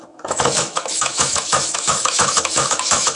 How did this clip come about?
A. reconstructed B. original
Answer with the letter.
A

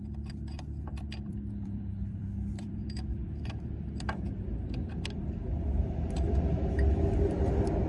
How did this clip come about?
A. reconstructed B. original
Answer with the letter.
A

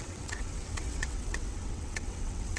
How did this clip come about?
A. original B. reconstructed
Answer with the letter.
B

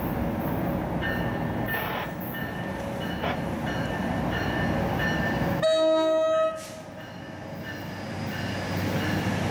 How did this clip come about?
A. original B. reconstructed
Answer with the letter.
A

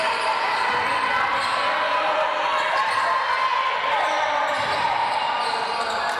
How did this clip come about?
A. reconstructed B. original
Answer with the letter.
B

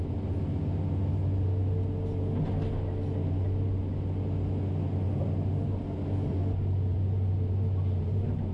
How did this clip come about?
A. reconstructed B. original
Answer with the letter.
B